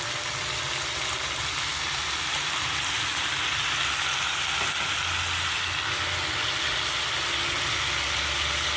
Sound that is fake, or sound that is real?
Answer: real